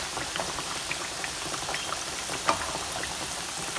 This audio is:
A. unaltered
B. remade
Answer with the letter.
A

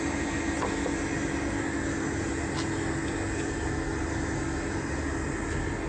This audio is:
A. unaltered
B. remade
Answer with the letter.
A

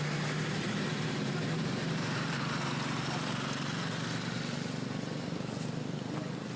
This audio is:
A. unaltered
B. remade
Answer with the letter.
A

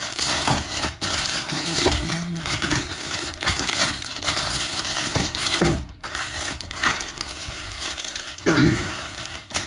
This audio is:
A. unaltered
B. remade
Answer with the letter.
B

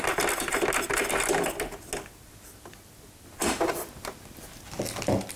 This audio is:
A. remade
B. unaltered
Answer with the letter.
B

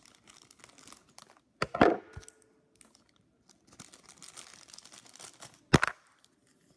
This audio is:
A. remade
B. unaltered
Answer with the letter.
B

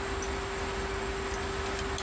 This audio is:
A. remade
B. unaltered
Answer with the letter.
B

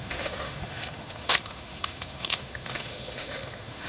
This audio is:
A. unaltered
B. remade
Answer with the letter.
B